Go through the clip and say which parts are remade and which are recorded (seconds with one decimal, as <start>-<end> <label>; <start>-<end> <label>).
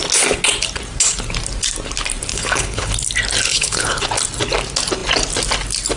0.0-2.3 recorded; 2.3-2.9 remade; 2.9-3.5 recorded; 3.5-4.1 remade; 4.1-6.0 recorded